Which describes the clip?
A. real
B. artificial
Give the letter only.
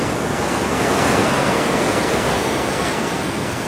B